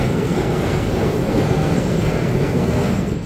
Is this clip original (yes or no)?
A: no